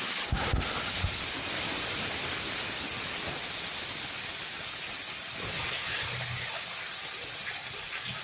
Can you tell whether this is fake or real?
real